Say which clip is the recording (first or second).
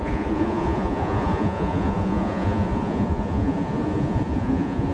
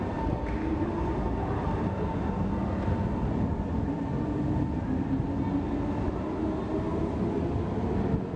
second